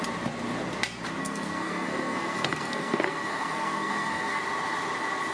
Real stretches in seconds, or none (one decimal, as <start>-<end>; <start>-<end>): 0.0-1.2; 4.4-5.3